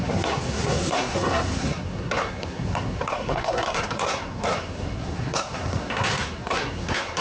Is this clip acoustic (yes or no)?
no